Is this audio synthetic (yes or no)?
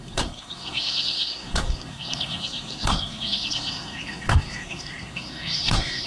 yes